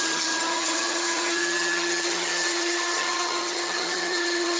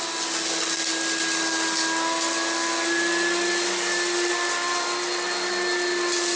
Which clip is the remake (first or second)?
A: first